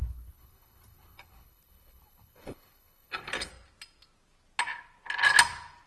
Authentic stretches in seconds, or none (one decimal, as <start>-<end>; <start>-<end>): 3.5-5.9